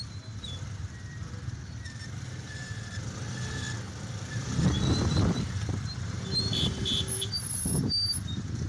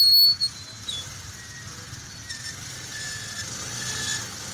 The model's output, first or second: first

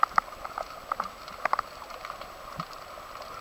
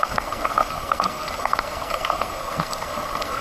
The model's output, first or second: second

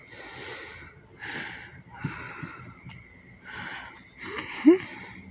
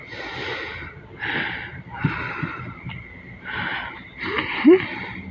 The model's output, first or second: second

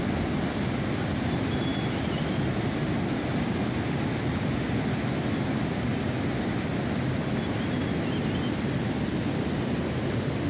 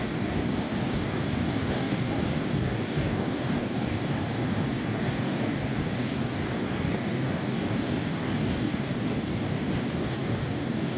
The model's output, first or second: second